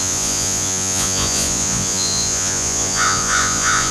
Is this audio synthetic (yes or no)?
yes